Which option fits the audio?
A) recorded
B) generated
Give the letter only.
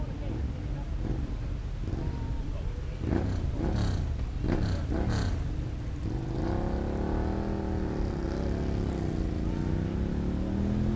A